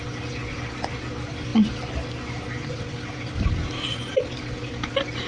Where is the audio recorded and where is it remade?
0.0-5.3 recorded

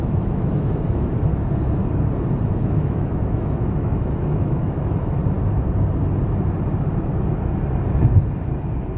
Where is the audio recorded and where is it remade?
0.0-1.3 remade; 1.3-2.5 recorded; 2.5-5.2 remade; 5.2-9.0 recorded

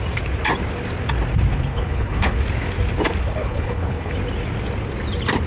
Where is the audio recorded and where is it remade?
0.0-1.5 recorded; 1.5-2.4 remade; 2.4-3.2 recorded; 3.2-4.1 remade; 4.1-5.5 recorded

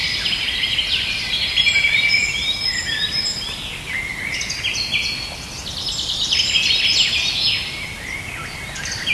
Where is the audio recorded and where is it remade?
0.0-2.1 remade; 2.1-9.1 recorded

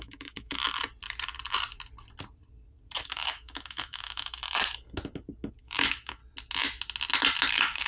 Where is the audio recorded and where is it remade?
0.0-0.6 remade; 0.6-3.0 recorded; 3.0-4.4 remade; 4.4-5.6 recorded; 5.6-6.2 remade; 6.2-7.5 recorded; 7.5-7.9 remade

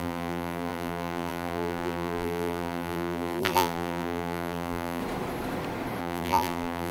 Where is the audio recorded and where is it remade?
0.0-5.0 remade; 5.0-6.0 recorded; 6.0-6.9 remade

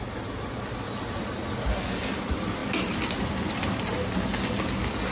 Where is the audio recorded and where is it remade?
0.0-5.1 recorded

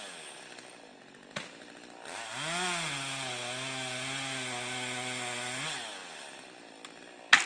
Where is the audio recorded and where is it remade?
0.0-7.5 recorded